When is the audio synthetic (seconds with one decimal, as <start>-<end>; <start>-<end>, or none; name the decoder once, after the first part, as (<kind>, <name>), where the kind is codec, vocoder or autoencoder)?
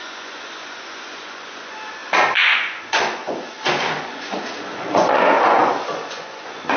0.0-6.8 (vocoder, Vocos)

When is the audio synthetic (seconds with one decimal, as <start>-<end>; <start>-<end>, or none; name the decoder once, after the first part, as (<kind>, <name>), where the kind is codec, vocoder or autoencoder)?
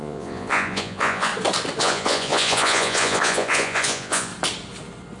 0.0-1.3 (vocoder, Vocos); 1.8-4.3